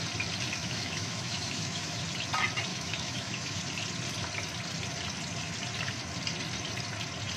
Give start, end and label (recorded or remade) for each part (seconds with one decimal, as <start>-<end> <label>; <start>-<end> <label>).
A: 0.0-0.6 recorded; 0.6-2.0 remade; 2.0-2.7 recorded; 2.7-3.6 remade; 3.6-7.4 recorded